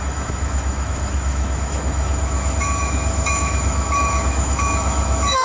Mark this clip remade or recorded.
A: remade